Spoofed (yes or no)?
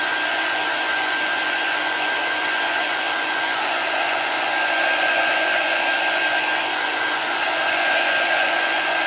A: yes